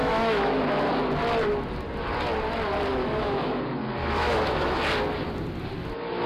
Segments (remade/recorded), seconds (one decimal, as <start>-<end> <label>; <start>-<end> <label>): 0.0-0.6 remade; 0.6-3.0 recorded; 3.0-3.6 remade; 3.6-4.0 recorded; 4.0-4.8 remade; 4.8-6.3 recorded